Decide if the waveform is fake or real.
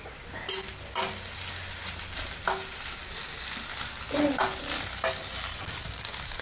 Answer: real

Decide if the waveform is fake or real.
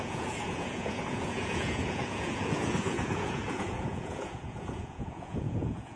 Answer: fake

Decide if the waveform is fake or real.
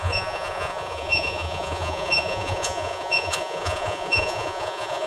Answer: fake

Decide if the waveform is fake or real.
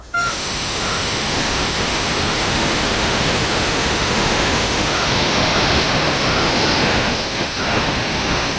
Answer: fake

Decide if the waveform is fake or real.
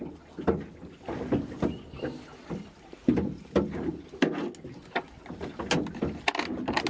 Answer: real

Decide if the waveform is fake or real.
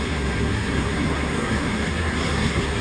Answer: fake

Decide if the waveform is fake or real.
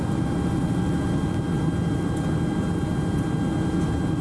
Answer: real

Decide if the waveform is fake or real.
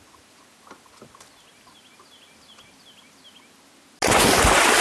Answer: real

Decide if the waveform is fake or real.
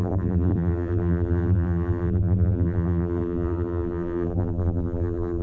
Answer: fake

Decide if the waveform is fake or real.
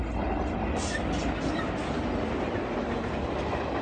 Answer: real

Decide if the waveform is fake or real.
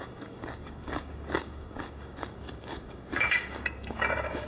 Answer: fake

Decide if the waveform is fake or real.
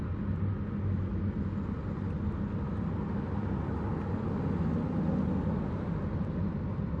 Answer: real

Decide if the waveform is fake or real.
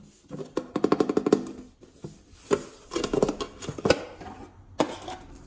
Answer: real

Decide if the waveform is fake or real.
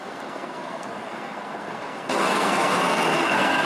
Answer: fake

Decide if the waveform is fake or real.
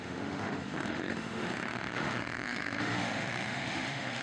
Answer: fake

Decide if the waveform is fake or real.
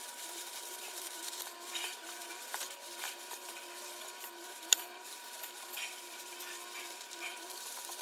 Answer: fake